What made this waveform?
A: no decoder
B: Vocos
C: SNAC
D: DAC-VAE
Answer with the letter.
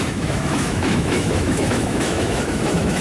D